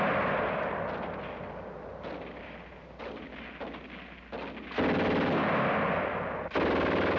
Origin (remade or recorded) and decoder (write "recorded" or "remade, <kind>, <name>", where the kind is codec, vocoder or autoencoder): recorded